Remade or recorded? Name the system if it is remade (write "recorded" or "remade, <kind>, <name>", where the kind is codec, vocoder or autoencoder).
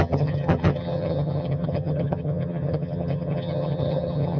remade, vocoder, HiFi-GAN